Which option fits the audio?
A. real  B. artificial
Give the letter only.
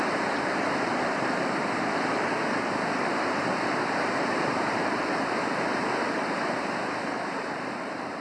B